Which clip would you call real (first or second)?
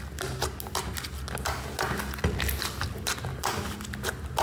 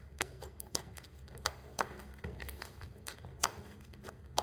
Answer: first